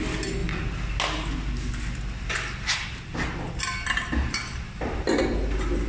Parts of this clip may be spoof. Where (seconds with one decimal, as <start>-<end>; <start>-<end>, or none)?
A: none